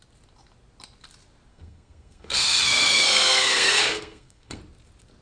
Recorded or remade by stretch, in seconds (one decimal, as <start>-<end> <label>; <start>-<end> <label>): 0.0-1.5 recorded; 1.5-4.6 remade; 4.6-5.2 recorded